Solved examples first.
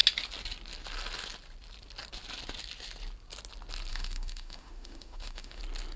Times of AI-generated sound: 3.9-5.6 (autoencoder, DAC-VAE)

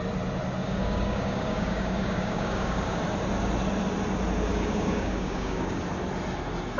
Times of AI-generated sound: 0.6-3.0 (codec, DAC); 4.5-5.8

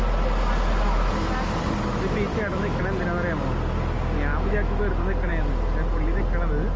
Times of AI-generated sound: 2.3-2.8 (autoencoder, DAC-VAE); 4.3-4.8

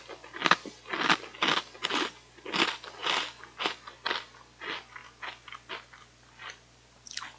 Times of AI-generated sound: none

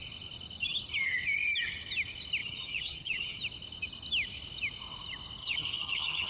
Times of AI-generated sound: 2.4-3.4 (vocoder, HiFi-GAN); 5.4-6.3

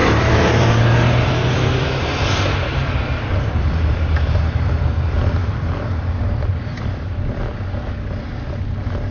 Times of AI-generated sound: 0.0-4.4 (vocoder, BigVGAN v2); 5.4-7.4